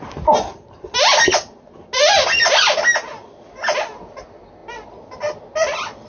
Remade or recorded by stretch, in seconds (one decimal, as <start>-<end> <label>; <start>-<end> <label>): 0.0-6.1 recorded